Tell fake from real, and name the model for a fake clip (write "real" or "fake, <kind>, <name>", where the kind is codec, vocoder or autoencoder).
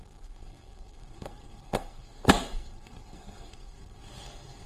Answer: fake, codec, SNAC